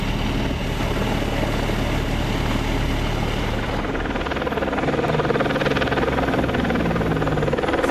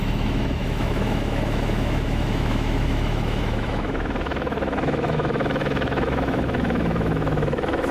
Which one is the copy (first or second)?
second